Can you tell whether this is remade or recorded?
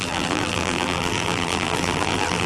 remade